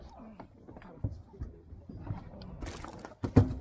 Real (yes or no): yes